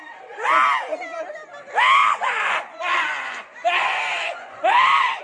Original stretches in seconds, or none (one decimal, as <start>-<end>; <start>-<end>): 0.0-2.0